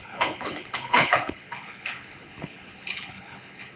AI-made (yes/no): yes